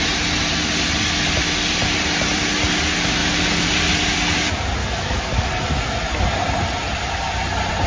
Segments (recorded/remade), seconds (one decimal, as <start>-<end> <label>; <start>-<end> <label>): 0.0-4.8 recorded; 4.8-5.5 remade; 5.5-7.9 recorded